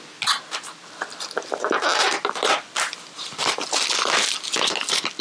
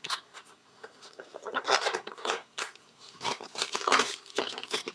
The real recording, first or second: first